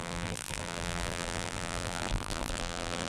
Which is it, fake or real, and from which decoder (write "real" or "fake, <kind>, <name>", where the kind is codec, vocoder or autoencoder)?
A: fake, vocoder, BigVGAN v2